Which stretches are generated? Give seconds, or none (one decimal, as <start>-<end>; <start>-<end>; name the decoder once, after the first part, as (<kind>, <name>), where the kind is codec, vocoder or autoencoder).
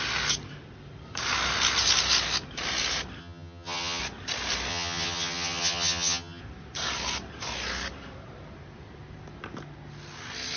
3.2-4.0 (vocoder, HiFi-GAN); 4.7-6.4